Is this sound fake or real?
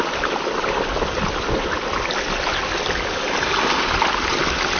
real